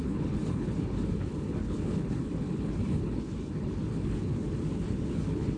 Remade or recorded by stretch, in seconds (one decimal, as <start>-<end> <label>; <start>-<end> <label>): 0.0-5.6 remade